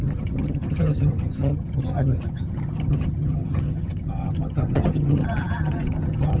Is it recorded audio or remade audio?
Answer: remade